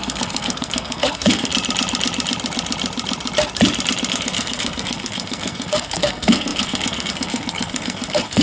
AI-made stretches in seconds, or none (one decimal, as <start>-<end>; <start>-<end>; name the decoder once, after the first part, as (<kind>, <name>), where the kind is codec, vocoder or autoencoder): 0.0-1.5 (codec, SNAC); 4.1-8.4